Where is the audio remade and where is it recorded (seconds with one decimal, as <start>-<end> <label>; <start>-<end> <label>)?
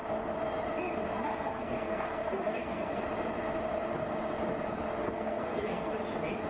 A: 0.0-1.3 recorded; 1.3-3.0 remade; 3.0-5.0 recorded; 5.0-5.9 remade; 5.9-6.5 recorded